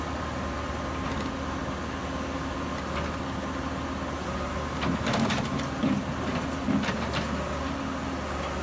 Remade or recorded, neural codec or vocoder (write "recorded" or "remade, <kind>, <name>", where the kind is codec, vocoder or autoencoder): recorded